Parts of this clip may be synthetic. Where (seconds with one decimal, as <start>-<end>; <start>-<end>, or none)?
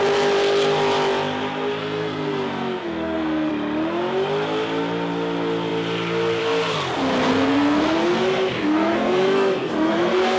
1.8-3.5; 7.3-10.4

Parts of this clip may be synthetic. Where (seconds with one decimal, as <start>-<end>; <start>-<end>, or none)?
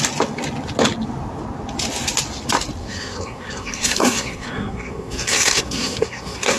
2.8-6.6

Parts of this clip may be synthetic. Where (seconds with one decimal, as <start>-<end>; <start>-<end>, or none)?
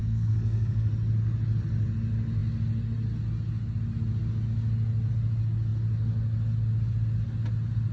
0.0-0.9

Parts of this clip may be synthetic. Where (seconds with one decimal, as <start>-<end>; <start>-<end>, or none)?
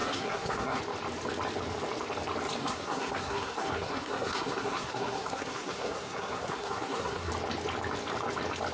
0.0-0.8; 2.6-7.3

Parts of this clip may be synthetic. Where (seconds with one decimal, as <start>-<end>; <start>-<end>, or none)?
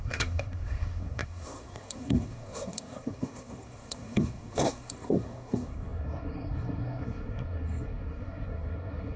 0.0-9.2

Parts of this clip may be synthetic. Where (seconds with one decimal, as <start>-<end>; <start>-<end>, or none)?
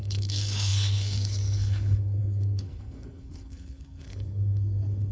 0.0-5.1